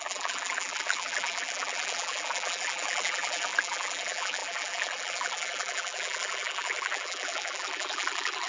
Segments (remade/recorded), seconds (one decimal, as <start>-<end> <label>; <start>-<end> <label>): 0.0-8.5 remade